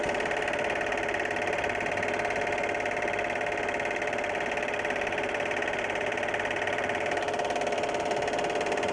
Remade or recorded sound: recorded